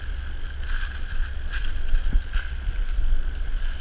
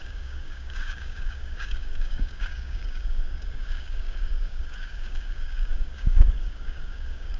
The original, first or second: first